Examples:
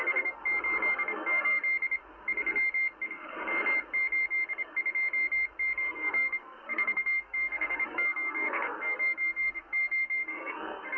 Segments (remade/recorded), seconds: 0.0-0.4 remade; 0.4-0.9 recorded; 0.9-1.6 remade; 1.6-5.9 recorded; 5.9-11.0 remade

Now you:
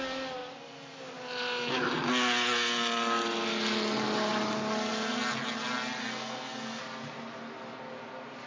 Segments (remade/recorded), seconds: 0.0-6.0 recorded; 6.0-6.8 remade; 6.8-8.5 recorded

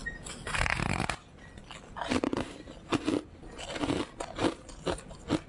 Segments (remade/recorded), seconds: 0.0-5.5 recorded